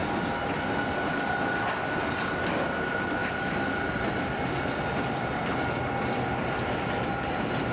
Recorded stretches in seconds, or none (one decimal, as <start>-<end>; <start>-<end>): 0.0-3.2; 5.4-7.7